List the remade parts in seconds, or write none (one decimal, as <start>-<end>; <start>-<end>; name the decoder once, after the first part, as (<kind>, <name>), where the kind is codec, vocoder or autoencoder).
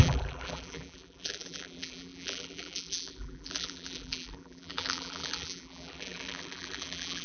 0.0-7.2 (vocoder, BigVGAN v2)